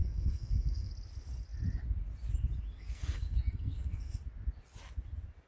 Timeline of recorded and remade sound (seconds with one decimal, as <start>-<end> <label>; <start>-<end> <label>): 0.0-0.9 remade; 0.9-2.7 recorded; 2.7-4.2 remade; 4.2-5.5 recorded